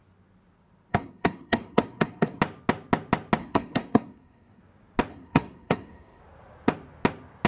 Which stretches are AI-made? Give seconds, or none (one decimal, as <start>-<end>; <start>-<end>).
0.9-2.4; 3.4-4.6; 5.1-6.2